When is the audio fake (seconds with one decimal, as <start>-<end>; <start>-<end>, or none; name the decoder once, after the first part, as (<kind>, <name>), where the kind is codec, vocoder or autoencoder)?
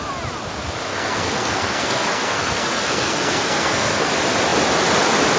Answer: 0.9-4.1 (codec, SNAC)